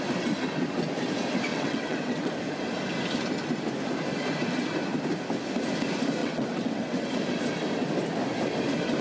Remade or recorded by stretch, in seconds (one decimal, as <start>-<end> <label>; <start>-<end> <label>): 0.0-1.5 recorded; 1.5-2.3 remade; 2.3-6.2 recorded; 6.2-7.1 remade; 7.1-9.0 recorded